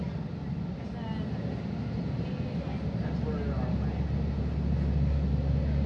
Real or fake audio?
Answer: real